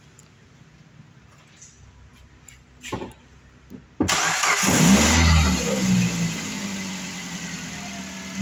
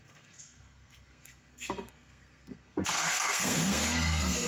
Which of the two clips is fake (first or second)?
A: second